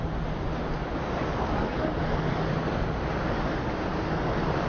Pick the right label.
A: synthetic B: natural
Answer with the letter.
B